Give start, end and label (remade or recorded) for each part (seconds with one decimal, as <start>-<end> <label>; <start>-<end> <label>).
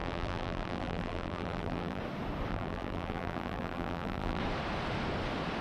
0.0-2.0 remade; 2.0-2.5 recorded; 2.5-4.4 remade; 4.4-5.6 recorded